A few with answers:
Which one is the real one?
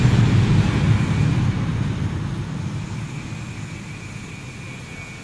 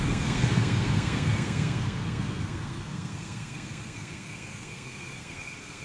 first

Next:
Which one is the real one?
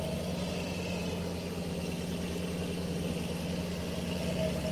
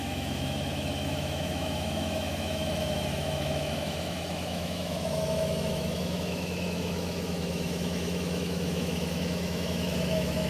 first